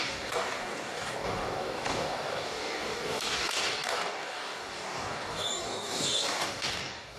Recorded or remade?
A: remade